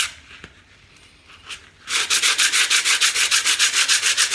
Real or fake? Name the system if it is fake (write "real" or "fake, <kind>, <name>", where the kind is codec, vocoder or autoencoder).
real